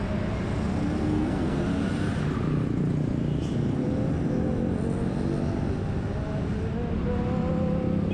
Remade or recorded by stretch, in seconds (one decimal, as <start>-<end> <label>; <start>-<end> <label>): 0.0-1.0 recorded; 1.0-1.6 remade; 1.6-8.1 recorded